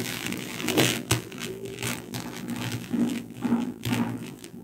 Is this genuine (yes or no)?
no